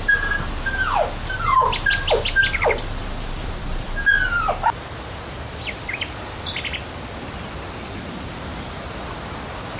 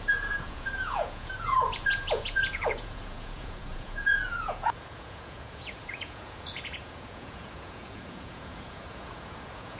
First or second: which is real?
first